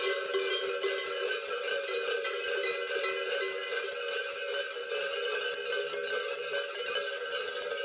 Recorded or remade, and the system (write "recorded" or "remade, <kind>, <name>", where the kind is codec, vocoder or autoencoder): recorded